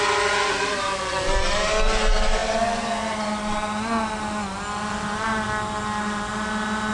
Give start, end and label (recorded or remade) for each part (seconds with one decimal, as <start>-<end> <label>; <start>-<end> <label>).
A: 0.0-6.9 recorded